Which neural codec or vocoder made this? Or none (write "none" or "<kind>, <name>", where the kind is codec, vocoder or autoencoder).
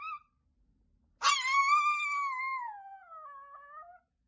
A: none